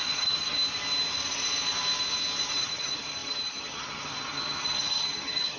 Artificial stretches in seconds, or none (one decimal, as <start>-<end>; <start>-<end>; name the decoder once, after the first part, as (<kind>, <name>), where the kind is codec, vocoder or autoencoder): 0.0-0.6 (vocoder, HiFi-GAN); 2.5-5.6